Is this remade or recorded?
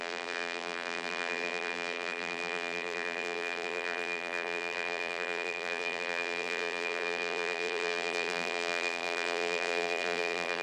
remade